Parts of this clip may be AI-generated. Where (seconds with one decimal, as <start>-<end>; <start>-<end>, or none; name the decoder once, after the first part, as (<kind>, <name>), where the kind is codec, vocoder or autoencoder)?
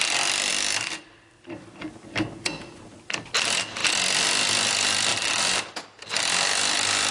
none